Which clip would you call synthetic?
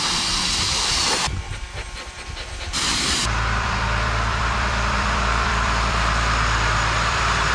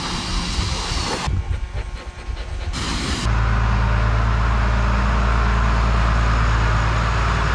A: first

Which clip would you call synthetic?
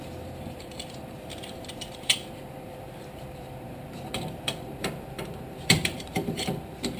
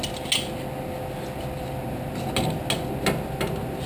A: first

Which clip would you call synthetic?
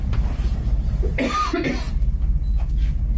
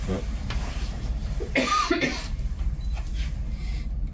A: second